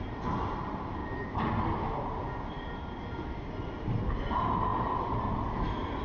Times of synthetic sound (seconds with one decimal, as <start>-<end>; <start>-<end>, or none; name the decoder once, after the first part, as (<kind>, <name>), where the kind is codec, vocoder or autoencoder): 0.0-1.0 (vocoder, BigVGAN v2); 4.1-6.0